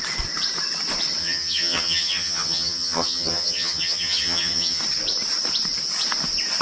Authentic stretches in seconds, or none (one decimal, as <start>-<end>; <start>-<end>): 0.0-1.2; 4.8-6.6